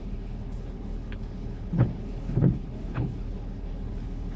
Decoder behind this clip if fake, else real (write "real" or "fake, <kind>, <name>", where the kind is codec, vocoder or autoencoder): fake, codec, HILCodec